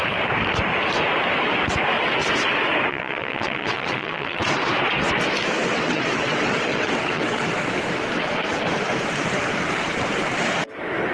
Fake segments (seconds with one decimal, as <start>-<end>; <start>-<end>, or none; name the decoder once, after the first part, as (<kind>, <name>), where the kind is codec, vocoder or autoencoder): 2.9-4.7 (vocoder, WaveNeXt); 5.7-7.4